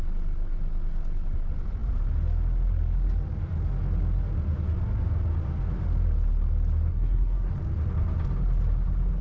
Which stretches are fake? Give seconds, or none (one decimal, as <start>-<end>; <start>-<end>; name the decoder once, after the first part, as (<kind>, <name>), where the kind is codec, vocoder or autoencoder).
6.9-7.5 (codec, SNAC)